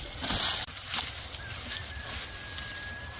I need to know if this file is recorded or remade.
recorded